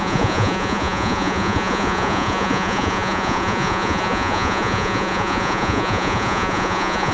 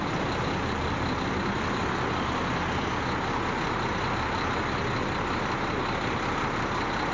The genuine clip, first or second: second